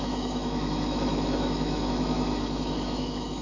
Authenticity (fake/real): fake